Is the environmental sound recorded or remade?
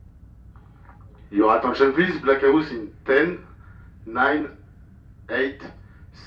remade